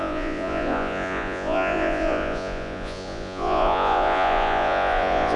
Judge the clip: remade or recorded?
remade